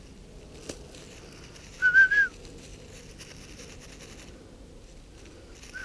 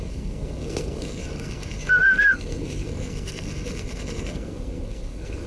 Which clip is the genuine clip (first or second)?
first